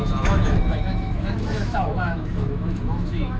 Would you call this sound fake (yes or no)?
yes